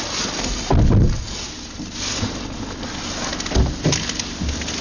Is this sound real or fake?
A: real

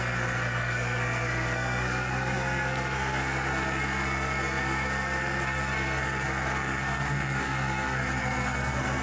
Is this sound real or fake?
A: fake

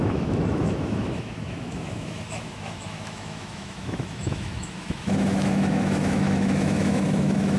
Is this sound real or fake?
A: fake